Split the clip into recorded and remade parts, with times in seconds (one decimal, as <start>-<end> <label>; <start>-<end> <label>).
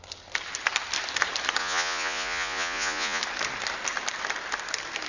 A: 0.0-1.6 recorded; 1.6-3.2 remade; 3.2-5.1 recorded